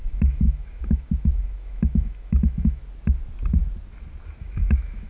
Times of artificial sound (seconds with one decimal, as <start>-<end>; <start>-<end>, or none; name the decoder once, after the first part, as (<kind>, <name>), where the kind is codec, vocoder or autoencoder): 0.0-2.8 (autoencoder, DAC-VAE); 4.4-5.1